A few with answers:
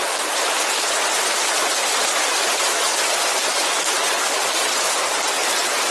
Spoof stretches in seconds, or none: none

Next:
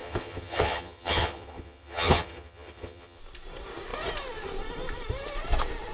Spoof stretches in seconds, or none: 0.0-3.2 (vocoder, HiFi-GAN)

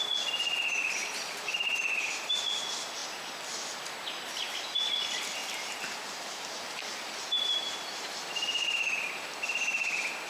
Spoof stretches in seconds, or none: 1.0-1.8 (vocoder, BigVGAN v2); 5.4-8.3

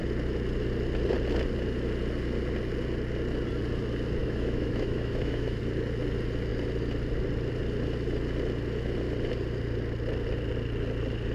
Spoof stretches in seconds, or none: 4.2-5.6 (autoencoder, DAC-VAE)

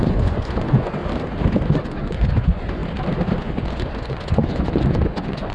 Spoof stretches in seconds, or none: 0.0-1.0 (vocoder, Vocos); 1.6-2.8; 3.4-5.5

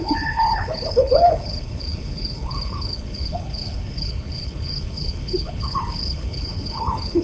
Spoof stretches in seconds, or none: 0.0-7.2 (codec, HILCodec)